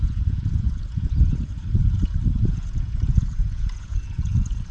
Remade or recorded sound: remade